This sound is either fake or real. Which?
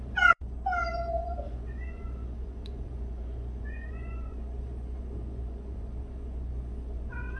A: fake